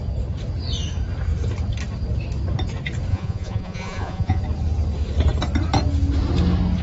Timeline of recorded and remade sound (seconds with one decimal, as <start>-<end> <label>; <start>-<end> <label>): 0.0-3.1 recorded; 3.1-4.4 remade; 4.4-6.8 recorded